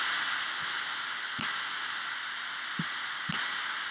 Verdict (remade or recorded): recorded